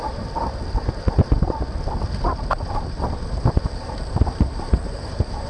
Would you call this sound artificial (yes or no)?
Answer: no